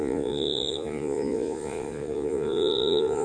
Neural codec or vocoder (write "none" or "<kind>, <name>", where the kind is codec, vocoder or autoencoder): vocoder, Vocos